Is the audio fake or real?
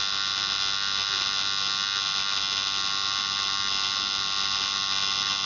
real